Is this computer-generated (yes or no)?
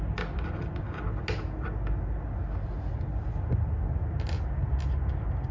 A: no